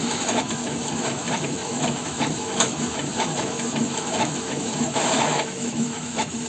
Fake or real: fake